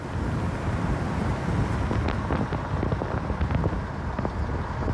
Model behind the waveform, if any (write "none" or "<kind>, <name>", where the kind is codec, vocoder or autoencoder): none